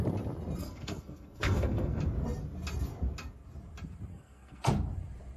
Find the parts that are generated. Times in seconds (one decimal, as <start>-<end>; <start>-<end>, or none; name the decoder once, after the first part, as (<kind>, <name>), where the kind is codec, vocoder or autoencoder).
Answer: 0.6-2.0 (codec, SNAC); 4.1-4.7